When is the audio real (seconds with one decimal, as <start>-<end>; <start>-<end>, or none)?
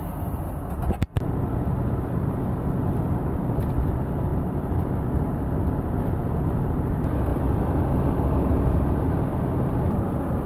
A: 0.0-10.5